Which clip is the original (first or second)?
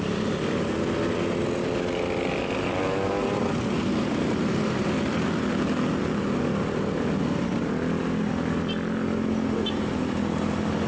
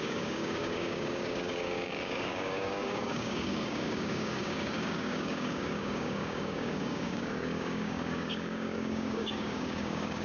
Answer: first